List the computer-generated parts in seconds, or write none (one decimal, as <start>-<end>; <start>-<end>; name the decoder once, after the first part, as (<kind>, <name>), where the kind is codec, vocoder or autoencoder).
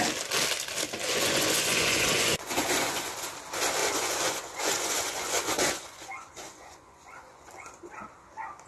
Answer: 1.0-3.3 (vocoder, Vocos); 3.8-7.5